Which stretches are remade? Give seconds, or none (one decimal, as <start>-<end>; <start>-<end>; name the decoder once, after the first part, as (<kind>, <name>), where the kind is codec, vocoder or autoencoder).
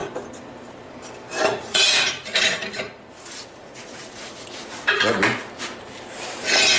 1.5-5.1 (vocoder, Vocos)